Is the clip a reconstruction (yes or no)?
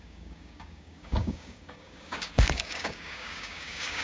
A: yes